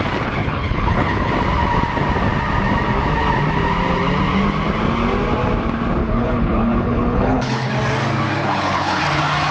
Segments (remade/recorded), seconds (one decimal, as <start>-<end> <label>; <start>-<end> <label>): 0.0-0.4 recorded; 0.4-1.3 remade; 1.3-6.0 recorded; 6.0-7.7 remade; 7.7-8.4 recorded; 8.4-9.0 remade; 9.0-9.5 recorded